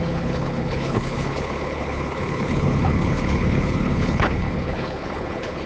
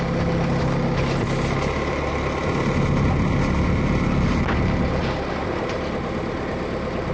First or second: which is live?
second